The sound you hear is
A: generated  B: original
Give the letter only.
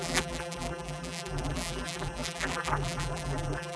A